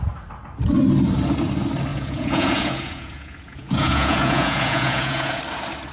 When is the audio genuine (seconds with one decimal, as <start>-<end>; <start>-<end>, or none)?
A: 0.0-1.9; 5.4-5.9